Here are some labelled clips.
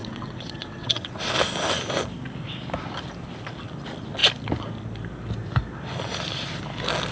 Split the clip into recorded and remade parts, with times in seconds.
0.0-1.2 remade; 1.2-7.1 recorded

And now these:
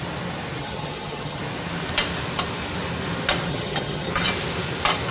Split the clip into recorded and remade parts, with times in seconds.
0.0-0.6 recorded; 0.6-1.4 remade; 1.4-3.5 recorded; 3.5-4.1 remade; 4.1-5.1 recorded

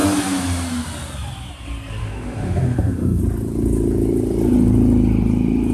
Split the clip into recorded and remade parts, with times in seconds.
0.0-2.0 recorded; 2.0-3.2 remade; 3.2-5.7 recorded

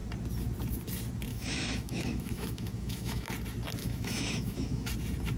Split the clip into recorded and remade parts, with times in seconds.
0.0-1.3 recorded; 1.3-3.3 remade; 3.3-3.8 recorded; 3.8-4.9 remade; 4.9-5.4 recorded

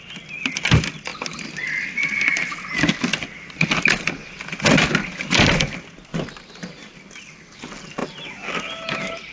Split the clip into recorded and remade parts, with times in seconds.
0.0-9.3 recorded